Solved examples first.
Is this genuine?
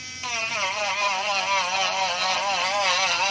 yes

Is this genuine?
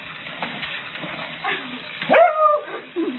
yes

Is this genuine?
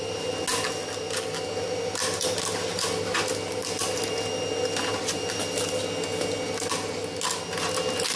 yes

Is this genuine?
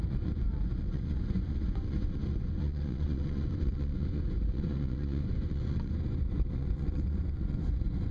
no